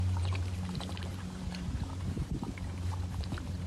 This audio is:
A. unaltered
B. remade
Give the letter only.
B